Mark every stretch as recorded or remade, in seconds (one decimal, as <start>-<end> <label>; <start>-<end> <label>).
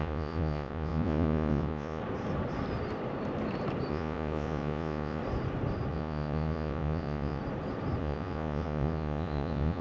0.0-2.0 remade; 2.0-3.9 recorded; 3.9-5.2 remade; 5.2-5.9 recorded; 5.9-7.4 remade; 7.4-8.0 recorded; 8.0-9.8 remade